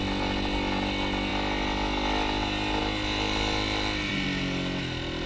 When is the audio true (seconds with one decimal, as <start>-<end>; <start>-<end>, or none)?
0.0-5.3